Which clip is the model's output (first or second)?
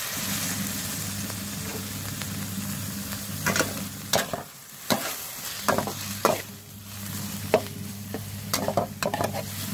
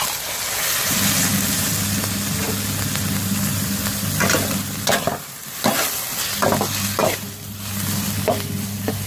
first